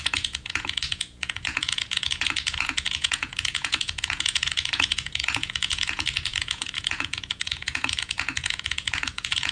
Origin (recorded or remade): remade